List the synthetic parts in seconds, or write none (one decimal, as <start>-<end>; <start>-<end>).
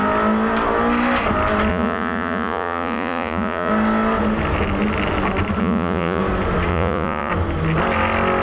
1.7-3.7; 5.6-6.2; 6.7-7.3